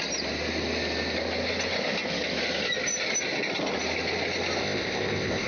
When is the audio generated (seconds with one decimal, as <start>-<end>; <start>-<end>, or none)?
4.6-5.5